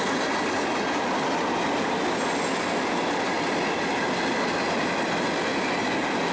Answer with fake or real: real